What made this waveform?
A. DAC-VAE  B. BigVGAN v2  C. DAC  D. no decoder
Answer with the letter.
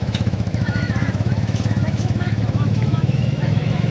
A